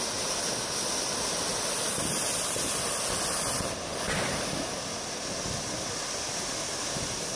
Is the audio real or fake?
real